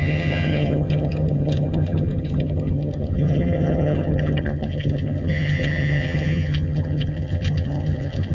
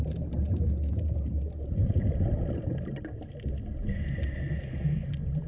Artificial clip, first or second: first